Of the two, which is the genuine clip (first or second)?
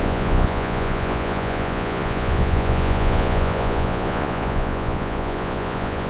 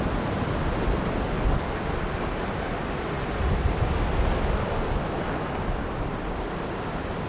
second